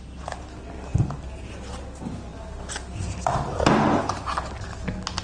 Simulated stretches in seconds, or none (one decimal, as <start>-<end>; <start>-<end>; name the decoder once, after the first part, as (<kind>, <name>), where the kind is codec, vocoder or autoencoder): none